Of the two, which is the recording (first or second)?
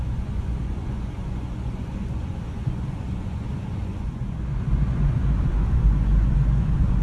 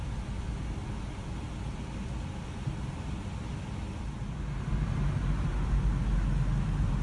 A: second